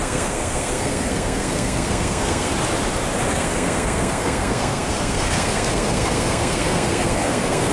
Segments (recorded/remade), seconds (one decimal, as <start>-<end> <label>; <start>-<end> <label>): 0.0-2.5 remade; 2.5-3.3 recorded; 3.3-7.7 remade